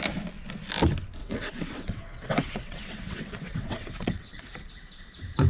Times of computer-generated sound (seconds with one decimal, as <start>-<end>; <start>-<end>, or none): 1.2-4.5